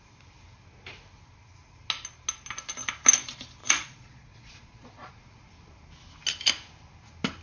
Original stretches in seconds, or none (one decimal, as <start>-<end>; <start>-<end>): 0.0-3.6; 5.1-7.4